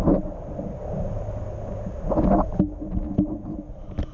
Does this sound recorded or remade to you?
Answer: recorded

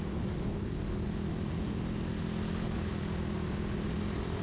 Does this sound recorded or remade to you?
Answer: recorded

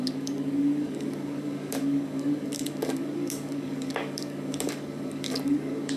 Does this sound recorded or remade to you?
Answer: remade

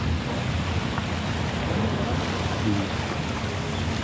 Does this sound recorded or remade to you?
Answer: recorded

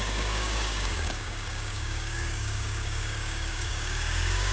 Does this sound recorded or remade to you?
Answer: remade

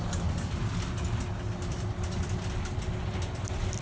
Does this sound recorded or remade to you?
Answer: recorded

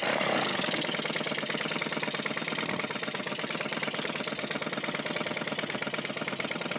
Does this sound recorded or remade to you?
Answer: recorded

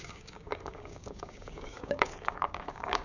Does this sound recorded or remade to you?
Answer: remade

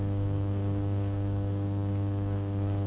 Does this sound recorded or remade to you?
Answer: remade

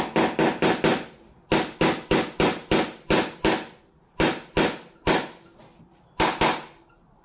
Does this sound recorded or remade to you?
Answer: recorded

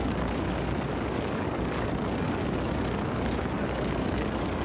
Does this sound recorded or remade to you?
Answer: remade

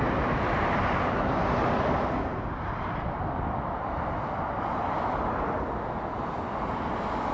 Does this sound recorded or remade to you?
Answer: recorded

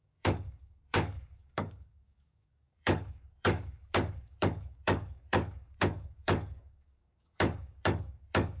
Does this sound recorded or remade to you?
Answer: remade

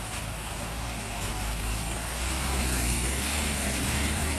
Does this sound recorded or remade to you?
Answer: remade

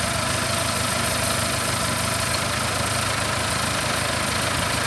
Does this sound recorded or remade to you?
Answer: recorded